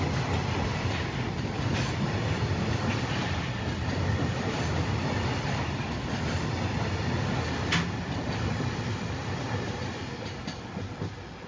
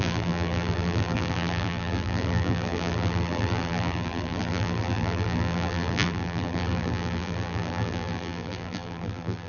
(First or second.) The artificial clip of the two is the second